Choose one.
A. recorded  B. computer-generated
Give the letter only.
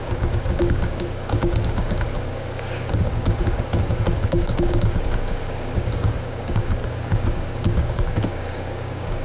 B